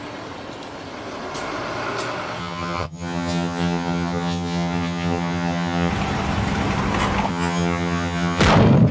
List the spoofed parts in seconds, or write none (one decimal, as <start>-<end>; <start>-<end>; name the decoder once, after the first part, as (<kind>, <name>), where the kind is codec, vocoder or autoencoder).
2.4-5.9 (vocoder, HiFi-GAN); 7.3-8.4